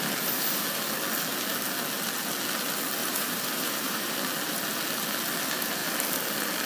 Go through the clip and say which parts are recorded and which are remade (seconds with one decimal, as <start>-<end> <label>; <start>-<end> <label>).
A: 0.0-3.0 recorded; 3.0-4.1 remade; 4.1-6.7 recorded